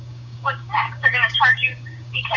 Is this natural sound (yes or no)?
no